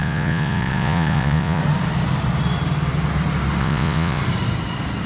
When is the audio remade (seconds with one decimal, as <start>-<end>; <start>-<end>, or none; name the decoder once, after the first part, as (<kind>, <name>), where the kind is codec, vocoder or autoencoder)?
0.0-1.6 (vocoder, Vocos); 3.6-4.2